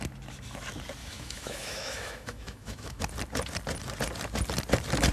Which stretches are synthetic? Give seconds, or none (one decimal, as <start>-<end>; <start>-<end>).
1.0-3.0